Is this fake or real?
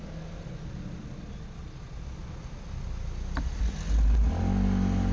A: real